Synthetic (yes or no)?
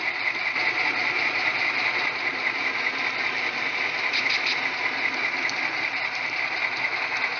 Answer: no